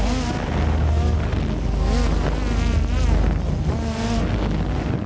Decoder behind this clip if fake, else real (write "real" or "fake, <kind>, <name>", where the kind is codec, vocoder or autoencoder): real